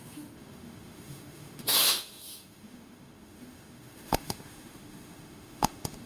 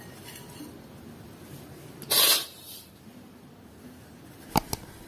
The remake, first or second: first